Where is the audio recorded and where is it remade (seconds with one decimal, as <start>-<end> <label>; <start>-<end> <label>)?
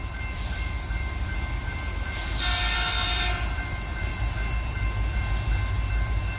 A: 0.0-6.4 remade